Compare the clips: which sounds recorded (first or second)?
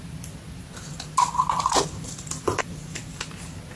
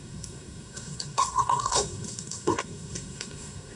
first